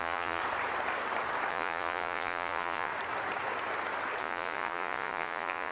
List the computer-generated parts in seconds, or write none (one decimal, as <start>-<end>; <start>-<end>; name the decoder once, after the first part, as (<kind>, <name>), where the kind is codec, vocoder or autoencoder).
0.0-0.4 (vocoder, Vocos); 1.5-2.9; 4.2-5.7